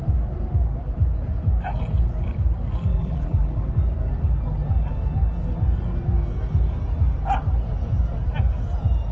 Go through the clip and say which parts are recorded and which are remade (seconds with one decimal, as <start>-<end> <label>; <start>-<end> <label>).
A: 0.0-2.9 recorded; 2.9-3.7 remade; 3.7-9.1 recorded

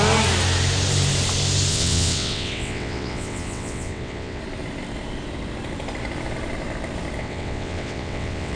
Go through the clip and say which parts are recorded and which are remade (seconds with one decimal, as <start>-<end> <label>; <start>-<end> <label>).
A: 0.0-1.7 recorded; 1.7-4.4 remade; 4.4-7.2 recorded; 7.2-8.6 remade

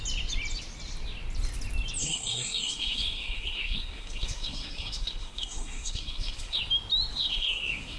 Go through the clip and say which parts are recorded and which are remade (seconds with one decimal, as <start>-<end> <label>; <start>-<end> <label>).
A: 0.0-2.0 recorded; 2.0-6.6 remade; 6.6-7.1 recorded; 7.1-8.0 remade

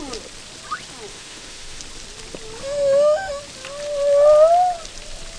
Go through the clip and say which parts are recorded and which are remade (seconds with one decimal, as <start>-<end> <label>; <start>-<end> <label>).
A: 0.0-1.1 recorded; 1.1-1.8 remade; 1.8-2.6 recorded; 2.6-3.4 remade; 3.4-5.4 recorded